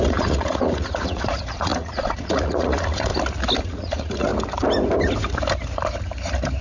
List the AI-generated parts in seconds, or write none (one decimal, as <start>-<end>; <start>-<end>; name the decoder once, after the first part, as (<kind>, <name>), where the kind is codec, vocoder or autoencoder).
0.0-3.1 (vocoder, Vocos); 3.6-4.3